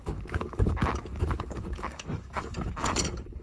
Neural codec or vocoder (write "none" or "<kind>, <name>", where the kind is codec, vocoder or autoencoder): codec, DAC